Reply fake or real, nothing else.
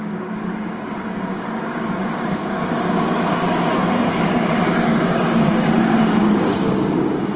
fake